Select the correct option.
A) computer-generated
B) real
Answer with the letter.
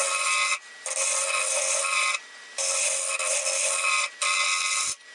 B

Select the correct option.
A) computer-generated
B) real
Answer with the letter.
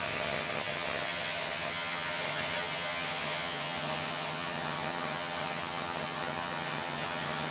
A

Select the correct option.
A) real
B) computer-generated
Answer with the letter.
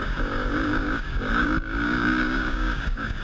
B